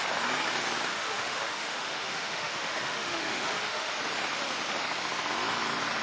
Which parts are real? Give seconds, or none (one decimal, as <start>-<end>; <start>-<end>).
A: 0.0-0.9; 3.9-6.0